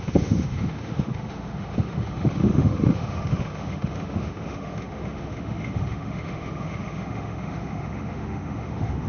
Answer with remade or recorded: remade